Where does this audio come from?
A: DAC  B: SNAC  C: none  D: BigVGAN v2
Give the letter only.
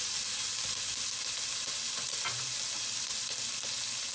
C